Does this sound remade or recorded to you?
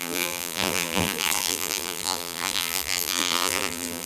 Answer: remade